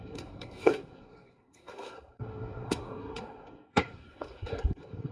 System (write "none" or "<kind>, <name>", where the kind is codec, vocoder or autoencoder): codec, SNAC